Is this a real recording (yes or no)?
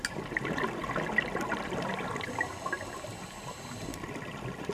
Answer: yes